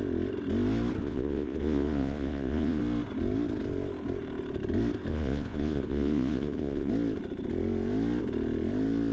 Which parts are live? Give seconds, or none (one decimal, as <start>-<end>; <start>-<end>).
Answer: 0.0-1.0; 2.8-5.1; 6.9-9.1